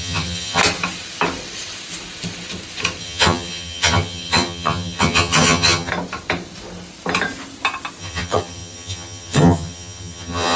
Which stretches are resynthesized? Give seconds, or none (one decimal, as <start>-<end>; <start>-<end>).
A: 0.0-0.6; 3.0-5.9; 8.0-10.6